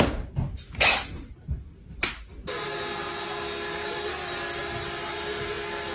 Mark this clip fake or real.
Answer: real